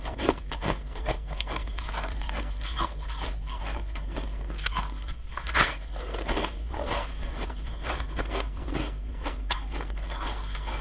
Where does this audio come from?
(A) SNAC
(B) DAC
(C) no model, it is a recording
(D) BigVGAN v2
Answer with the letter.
A